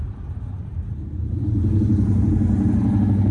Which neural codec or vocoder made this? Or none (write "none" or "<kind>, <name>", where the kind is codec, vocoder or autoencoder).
vocoder, BigVGAN v2